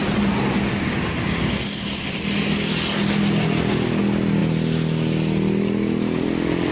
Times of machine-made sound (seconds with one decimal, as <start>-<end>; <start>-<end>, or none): none